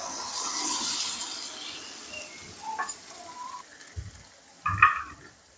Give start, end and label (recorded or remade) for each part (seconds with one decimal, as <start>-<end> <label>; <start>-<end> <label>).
0.0-5.6 recorded